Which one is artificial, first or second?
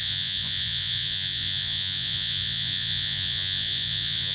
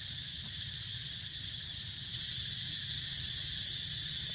first